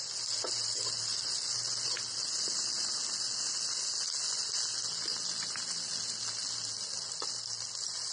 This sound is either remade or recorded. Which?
recorded